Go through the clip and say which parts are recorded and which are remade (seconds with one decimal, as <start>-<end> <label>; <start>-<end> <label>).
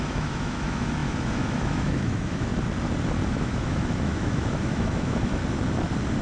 0.0-2.5 remade; 2.5-3.3 recorded; 3.3-5.4 remade; 5.4-6.2 recorded